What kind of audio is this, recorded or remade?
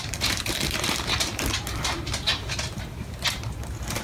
remade